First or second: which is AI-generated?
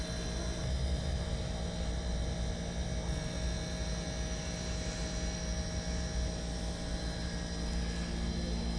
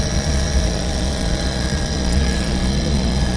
second